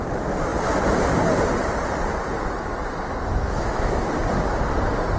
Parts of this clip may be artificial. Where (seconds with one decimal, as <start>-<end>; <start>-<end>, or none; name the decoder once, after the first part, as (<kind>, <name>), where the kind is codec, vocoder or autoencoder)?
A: 3.3-4.2 (autoencoder, DAC-VAE)